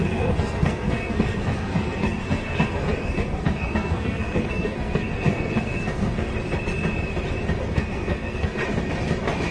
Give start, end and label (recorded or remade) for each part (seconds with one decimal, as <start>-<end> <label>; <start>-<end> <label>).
0.0-6.3 remade; 6.3-7.7 recorded; 7.7-8.6 remade; 8.6-9.5 recorded

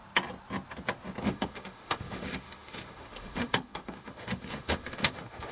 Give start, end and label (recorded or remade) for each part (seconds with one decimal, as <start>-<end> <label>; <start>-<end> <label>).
0.0-1.2 recorded; 1.2-5.5 remade

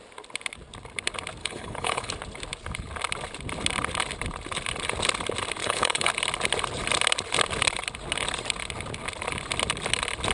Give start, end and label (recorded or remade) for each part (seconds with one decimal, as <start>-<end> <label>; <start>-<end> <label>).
0.0-1.4 recorded; 1.4-2.1 remade; 2.1-5.6 recorded; 5.6-6.1 remade; 6.1-10.3 recorded

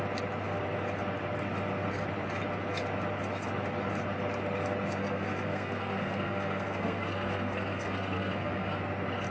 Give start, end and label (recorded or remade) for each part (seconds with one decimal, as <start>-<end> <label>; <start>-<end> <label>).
0.0-5.0 recorded; 5.0-8.8 remade; 8.8-9.3 recorded

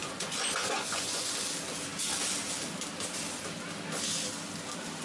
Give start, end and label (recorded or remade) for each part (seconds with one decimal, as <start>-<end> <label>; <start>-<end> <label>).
0.0-1.3 remade; 1.3-5.0 recorded

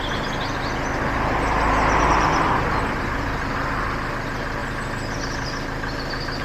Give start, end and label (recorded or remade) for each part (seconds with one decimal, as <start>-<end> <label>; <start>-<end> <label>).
0.0-6.4 recorded

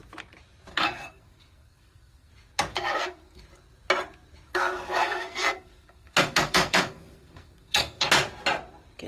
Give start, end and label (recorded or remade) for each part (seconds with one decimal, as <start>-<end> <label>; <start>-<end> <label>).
0.0-0.7 recorded; 0.7-2.3 remade; 2.3-2.7 recorded; 2.7-3.4 remade; 3.4-4.5 recorded; 4.5-8.1 remade; 8.1-9.1 recorded

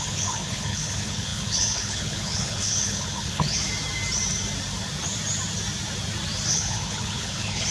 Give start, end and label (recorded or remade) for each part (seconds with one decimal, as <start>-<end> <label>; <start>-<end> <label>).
0.0-3.6 remade; 3.6-6.5 recorded; 6.5-7.7 remade